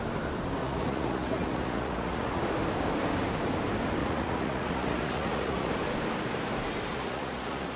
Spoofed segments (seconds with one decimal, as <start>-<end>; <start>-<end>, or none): 0.6-2.4; 4.0-5.7; 6.9-7.8